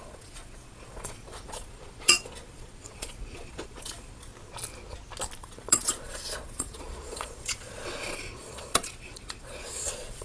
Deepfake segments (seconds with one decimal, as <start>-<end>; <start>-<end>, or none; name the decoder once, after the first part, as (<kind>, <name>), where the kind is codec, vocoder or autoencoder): 0.0-4.3 (vocoder, Vocos); 5.4-10.2